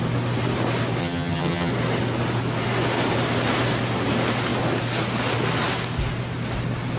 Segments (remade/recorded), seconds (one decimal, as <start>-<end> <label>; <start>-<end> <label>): 0.0-1.0 recorded; 1.0-1.7 remade; 1.7-7.0 recorded